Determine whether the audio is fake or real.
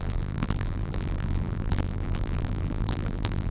fake